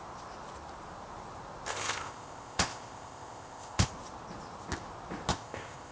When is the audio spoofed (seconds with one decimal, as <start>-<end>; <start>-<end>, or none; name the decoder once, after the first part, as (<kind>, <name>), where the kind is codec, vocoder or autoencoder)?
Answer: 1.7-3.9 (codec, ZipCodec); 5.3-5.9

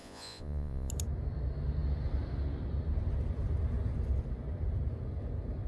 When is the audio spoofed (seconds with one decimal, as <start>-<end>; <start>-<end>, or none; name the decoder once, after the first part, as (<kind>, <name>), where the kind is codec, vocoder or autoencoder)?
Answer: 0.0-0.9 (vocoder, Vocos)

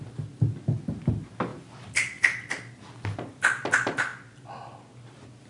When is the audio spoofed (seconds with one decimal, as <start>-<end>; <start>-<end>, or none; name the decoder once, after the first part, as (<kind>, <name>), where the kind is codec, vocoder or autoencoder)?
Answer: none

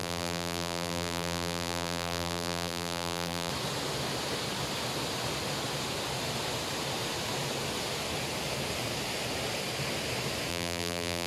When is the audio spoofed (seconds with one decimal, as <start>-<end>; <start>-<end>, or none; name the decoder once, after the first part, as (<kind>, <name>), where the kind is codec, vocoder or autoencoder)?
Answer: 0.0-3.5 (vocoder, BigVGAN v2); 10.5-11.3